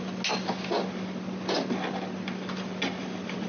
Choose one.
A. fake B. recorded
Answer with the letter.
B